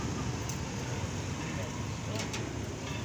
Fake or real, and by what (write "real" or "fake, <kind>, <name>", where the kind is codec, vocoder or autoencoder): real